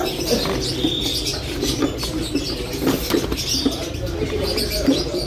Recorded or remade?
recorded